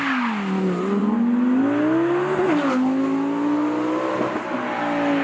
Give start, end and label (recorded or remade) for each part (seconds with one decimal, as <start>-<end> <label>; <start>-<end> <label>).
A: 0.0-5.2 recorded